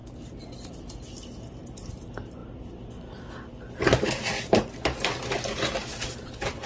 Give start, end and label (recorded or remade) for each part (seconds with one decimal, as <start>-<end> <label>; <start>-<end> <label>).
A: 0.0-6.7 recorded